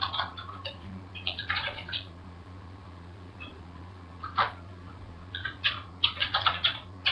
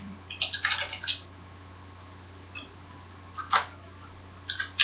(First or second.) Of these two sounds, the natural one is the second